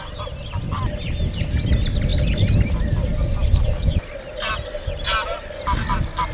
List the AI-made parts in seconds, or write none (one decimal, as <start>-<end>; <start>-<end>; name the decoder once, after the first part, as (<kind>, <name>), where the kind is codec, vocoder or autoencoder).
none

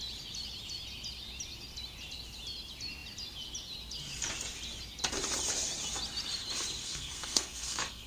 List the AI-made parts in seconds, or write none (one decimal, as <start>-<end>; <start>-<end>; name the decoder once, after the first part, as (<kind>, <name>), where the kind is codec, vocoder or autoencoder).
6.8-8.1 (codec, SNAC)

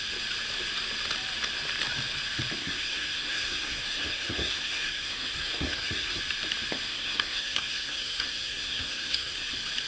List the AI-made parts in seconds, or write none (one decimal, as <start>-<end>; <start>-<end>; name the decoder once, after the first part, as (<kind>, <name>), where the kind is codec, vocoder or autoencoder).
2.6-6.2 (codec, SNAC); 6.9-9.5

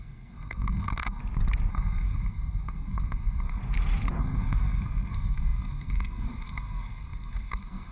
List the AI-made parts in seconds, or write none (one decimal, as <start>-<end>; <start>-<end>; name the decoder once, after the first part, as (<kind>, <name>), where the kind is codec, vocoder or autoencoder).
0.0-1.2 (codec, SNAC); 1.7-3.6; 4.2-7.9